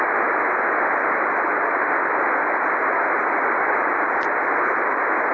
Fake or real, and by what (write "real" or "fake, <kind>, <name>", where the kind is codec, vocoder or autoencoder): real